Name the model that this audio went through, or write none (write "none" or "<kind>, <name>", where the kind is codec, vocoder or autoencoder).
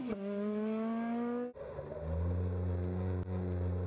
none